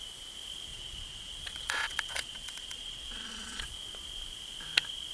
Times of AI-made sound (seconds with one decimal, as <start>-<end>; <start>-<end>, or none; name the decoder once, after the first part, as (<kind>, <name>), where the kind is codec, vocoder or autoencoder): 0.7-3.8 (vocoder, Vocos)